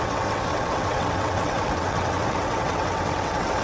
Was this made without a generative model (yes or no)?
no